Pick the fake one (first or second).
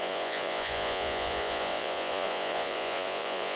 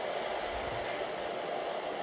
first